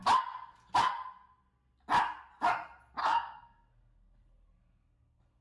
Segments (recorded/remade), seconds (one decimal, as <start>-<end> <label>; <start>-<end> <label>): 0.0-3.0 recorded; 3.0-5.4 remade